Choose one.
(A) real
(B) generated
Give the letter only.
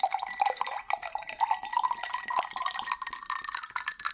A